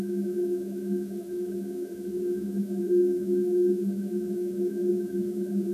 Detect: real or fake fake